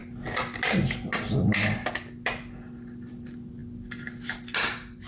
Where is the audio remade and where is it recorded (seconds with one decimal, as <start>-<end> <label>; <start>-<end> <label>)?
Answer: 0.0-5.1 recorded